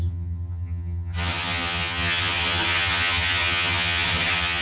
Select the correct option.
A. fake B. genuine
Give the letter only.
A